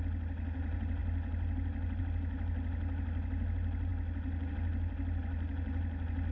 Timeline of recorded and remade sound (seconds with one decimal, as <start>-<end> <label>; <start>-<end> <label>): 0.0-6.3 recorded